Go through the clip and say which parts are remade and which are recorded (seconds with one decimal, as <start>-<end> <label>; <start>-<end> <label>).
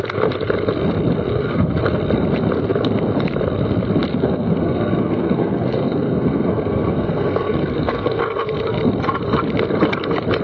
0.0-1.3 recorded; 1.3-1.8 remade; 1.8-4.1 recorded; 4.1-8.2 remade; 8.2-10.4 recorded